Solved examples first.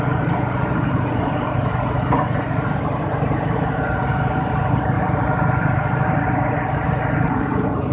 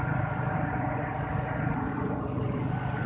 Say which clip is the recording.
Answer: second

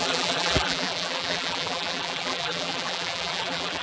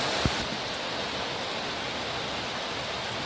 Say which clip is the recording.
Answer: second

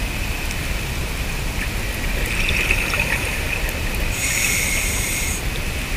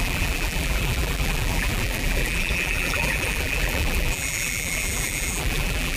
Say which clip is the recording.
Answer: first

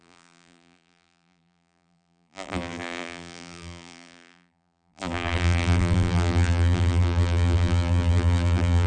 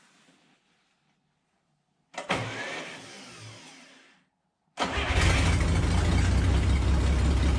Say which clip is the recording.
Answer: second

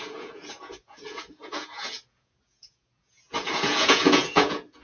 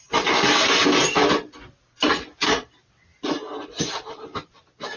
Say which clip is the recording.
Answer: second